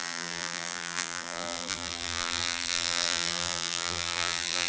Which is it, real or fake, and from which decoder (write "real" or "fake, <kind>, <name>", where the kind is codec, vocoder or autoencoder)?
fake, vocoder, BigVGAN v2